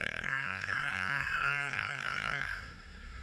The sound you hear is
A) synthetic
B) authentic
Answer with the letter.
A